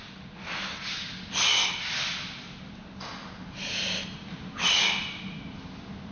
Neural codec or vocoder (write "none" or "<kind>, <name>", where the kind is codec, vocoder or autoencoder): none